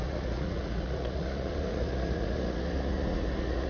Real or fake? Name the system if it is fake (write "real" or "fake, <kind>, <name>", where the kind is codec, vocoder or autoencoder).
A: fake, vocoder, Vocos